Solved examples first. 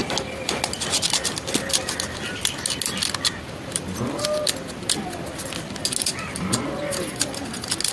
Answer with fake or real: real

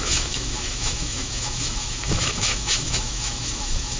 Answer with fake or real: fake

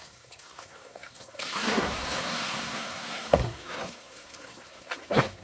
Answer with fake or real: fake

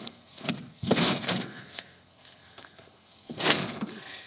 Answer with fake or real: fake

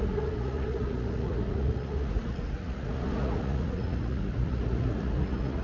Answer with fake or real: fake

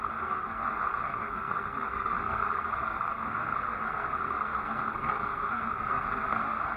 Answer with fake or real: fake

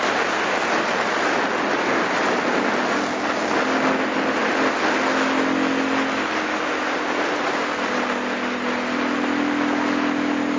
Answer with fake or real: real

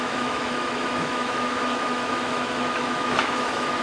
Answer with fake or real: fake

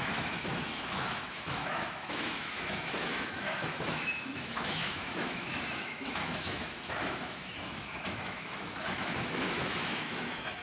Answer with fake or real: fake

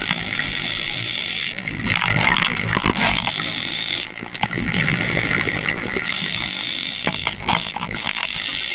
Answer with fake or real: fake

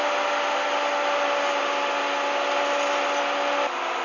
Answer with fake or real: real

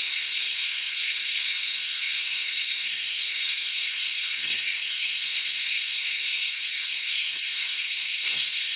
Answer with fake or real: fake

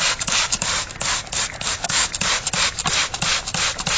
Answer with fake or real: fake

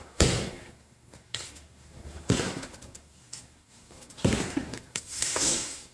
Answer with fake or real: fake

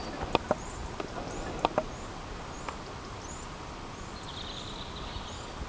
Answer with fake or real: real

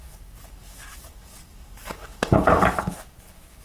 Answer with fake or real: fake